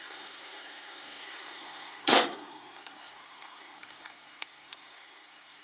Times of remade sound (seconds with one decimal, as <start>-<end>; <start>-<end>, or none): 0.0-5.6